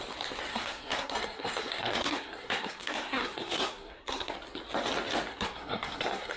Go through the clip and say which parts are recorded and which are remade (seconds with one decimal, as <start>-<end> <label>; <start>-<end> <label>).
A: 0.0-0.5 recorded; 0.5-4.3 remade; 4.3-5.3 recorded; 5.3-6.4 remade